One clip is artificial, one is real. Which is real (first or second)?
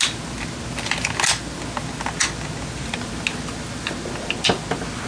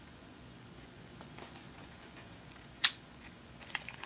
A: first